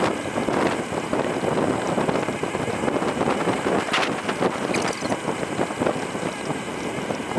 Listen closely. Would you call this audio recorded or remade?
recorded